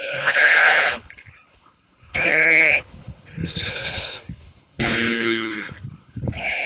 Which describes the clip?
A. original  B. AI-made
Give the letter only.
B